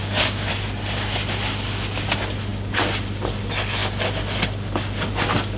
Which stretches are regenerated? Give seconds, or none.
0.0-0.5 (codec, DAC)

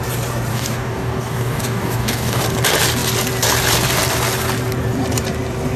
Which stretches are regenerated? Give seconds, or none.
0.5-2.4 (codec, DAC)

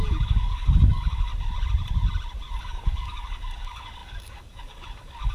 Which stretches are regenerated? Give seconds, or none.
0.0-1.3 (codec, DAC); 2.5-5.3

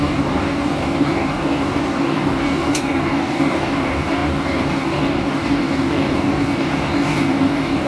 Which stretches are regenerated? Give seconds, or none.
0.0-7.9 (codec, DAC)

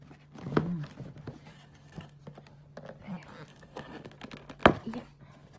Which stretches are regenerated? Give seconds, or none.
1.5-2.2 (codec, DAC); 3.5-4.1

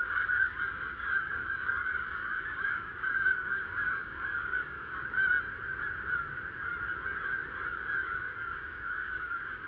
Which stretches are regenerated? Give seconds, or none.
0.0-5.2 (codec, DAC); 7.7-9.7